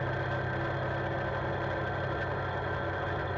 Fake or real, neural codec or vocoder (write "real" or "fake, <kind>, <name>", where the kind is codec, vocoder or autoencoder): real